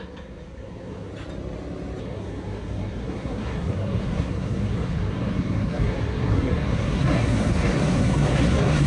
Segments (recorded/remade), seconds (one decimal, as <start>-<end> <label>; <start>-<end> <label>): 0.0-1.1 remade; 1.1-2.0 recorded; 2.0-8.9 remade